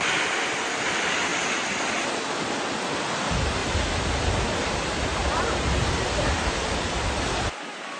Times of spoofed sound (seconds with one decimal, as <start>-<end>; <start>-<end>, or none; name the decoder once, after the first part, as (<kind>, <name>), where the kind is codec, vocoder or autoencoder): none